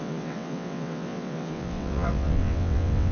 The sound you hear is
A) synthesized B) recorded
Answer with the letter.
A